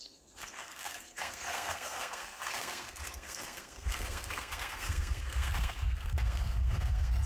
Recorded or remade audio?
remade